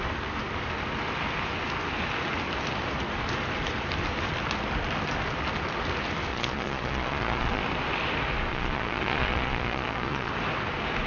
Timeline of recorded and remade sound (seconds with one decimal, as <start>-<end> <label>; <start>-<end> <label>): 0.0-6.3 recorded; 6.3-7.6 remade; 7.6-8.5 recorded; 8.5-10.3 remade; 10.3-11.1 recorded